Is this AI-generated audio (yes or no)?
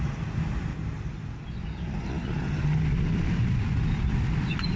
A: no